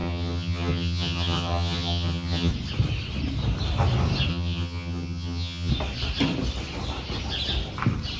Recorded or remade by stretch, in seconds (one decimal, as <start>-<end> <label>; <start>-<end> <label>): 0.0-2.5 remade; 2.5-4.3 recorded; 4.3-5.7 remade; 5.7-8.2 recorded